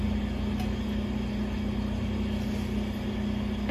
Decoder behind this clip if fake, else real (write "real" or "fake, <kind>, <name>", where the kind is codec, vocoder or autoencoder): real